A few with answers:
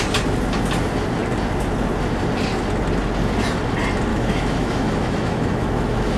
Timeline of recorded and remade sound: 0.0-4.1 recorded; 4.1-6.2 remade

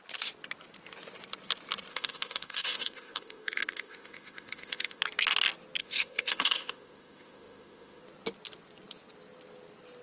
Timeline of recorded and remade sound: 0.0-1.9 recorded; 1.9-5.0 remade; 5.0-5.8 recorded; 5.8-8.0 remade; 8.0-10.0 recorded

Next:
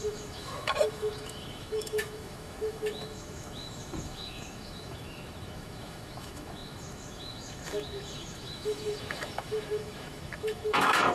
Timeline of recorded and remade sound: 0.0-11.1 remade

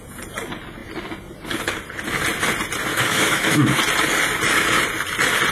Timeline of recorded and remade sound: 0.0-2.9 recorded; 2.9-3.8 remade; 3.8-5.5 recorded

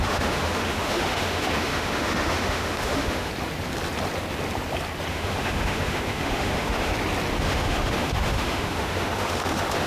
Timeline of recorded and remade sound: 0.0-3.3 remade; 3.3-5.1 recorded; 5.1-6.9 remade; 6.9-7.4 recorded; 7.4-9.9 remade

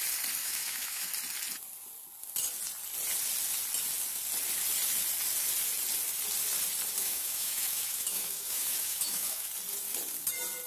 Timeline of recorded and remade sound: 0.0-0.4 recorded; 0.4-1.1 remade; 1.1-7.0 recorded; 7.0-9.5 remade; 9.5-10.7 recorded

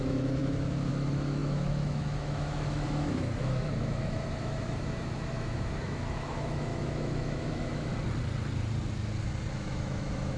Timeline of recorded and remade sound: 0.0-7.9 remade; 7.9-9.5 recorded; 9.5-10.4 remade